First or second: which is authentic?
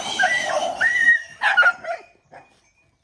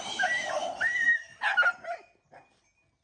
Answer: second